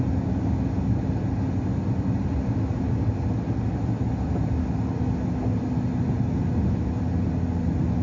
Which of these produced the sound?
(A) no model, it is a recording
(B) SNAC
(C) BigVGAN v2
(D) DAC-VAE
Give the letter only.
A